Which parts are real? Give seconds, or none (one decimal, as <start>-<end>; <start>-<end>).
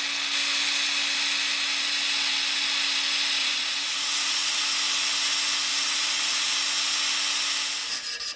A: 0.0-3.4; 4.6-5.7; 6.5-8.4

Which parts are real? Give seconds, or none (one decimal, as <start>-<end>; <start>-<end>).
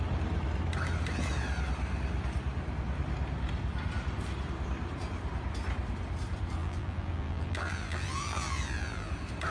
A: 0.0-6.6; 9.1-9.5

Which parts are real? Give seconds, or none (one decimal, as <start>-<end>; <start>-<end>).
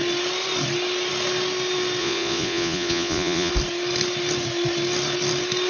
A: 0.0-2.0; 3.5-5.7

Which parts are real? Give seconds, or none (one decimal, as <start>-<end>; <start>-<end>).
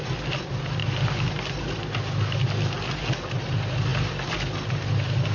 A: 0.0-5.3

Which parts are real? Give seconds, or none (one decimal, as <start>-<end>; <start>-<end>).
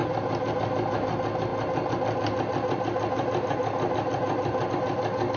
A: 0.0-5.4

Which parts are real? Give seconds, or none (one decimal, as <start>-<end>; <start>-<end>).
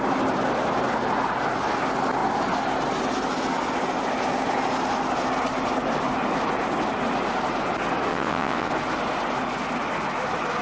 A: 0.0-8.1; 8.7-10.6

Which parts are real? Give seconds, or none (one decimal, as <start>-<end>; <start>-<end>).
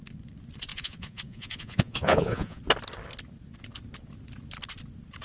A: 0.0-0.7; 2.6-5.2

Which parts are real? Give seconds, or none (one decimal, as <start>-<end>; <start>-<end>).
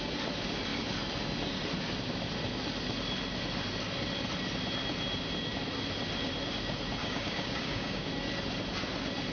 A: 0.0-7.0; 8.1-9.3